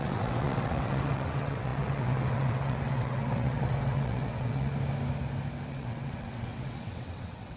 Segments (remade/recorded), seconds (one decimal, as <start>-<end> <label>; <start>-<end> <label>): 0.0-4.7 remade; 4.7-5.7 recorded; 5.7-7.6 remade